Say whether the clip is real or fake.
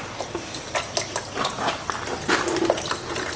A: real